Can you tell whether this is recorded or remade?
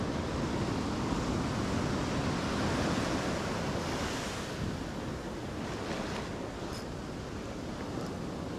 recorded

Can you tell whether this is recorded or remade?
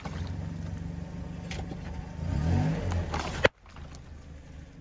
recorded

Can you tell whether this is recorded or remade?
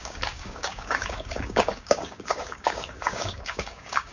remade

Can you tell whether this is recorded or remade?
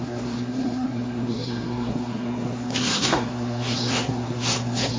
remade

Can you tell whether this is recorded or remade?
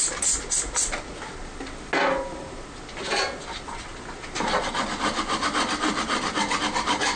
recorded